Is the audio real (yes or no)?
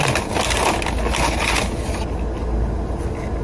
yes